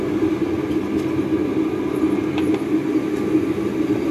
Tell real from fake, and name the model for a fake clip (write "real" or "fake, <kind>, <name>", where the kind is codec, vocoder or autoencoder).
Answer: real